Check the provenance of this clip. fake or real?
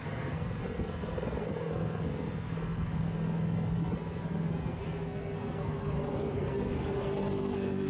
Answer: fake